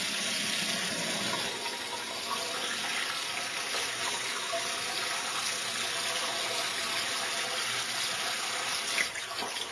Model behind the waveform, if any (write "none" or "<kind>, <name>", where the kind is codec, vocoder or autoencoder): none